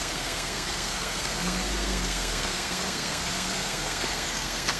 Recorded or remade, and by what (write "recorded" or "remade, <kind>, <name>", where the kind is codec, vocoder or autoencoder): remade, codec, SNAC